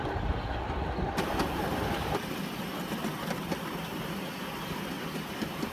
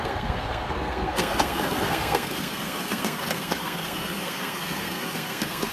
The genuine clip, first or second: first